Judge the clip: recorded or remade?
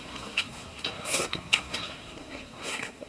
remade